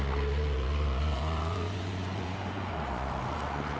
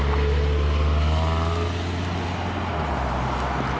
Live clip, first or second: second